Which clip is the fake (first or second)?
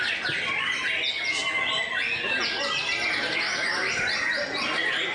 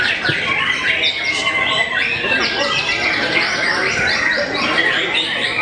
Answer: second